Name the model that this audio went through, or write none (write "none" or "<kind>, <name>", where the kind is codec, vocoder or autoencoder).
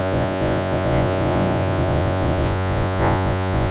vocoder, Vocos